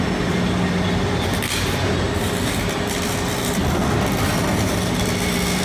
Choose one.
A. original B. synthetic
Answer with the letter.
A